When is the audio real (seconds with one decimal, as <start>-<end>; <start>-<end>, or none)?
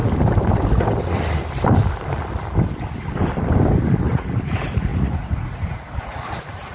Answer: 0.0-4.0